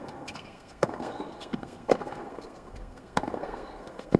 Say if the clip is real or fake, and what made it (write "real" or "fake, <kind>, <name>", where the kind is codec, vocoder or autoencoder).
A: fake, codec, SNAC